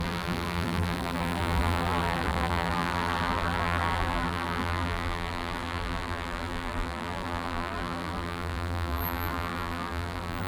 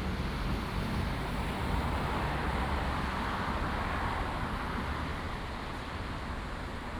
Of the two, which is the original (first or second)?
second